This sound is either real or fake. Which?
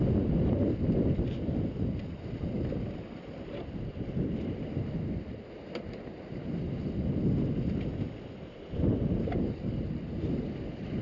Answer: real